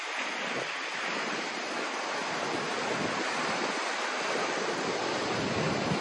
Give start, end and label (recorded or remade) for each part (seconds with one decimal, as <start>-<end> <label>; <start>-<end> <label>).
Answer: 0.0-6.0 recorded